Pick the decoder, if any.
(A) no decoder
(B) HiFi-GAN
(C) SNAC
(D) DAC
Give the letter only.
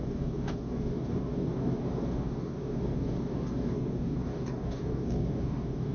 D